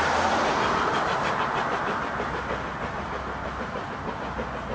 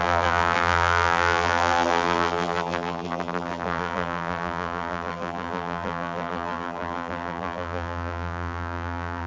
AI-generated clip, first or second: second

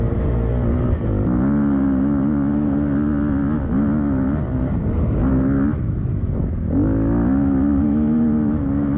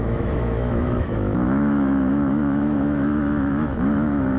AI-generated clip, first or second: second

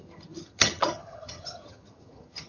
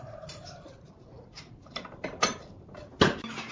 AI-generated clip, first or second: first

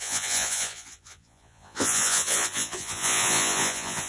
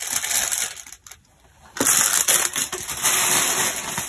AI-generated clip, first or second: first